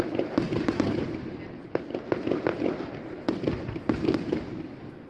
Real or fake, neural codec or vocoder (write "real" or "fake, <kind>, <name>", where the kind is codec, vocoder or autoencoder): real